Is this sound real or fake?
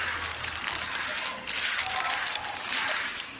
real